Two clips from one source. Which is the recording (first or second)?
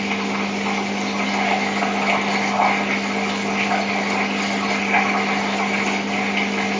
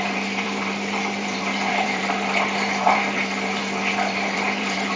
first